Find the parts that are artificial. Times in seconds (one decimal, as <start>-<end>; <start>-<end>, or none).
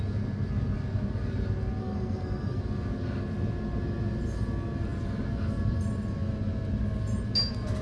1.8-2.6